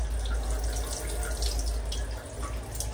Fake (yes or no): no